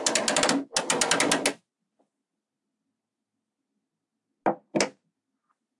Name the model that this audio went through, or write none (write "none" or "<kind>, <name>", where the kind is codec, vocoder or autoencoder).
none